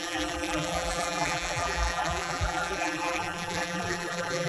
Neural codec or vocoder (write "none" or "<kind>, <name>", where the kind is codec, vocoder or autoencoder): vocoder, BigVGAN v2